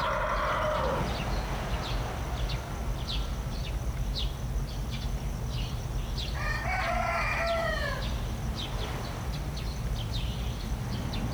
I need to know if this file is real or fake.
real